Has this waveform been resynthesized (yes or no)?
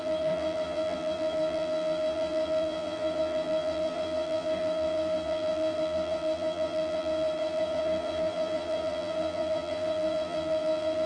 yes